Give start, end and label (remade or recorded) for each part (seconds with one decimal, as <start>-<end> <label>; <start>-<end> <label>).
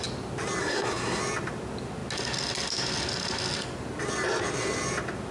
0.0-0.6 recorded; 0.6-1.2 remade; 1.2-5.3 recorded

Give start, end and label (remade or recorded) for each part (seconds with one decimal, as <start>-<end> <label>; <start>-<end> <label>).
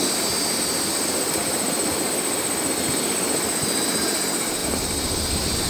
0.0-4.6 recorded; 4.6-5.7 remade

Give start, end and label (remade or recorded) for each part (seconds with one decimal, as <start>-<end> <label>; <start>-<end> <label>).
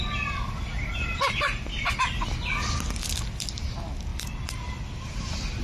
0.0-0.7 recorded; 0.7-2.9 remade; 2.9-4.1 recorded; 4.1-5.6 remade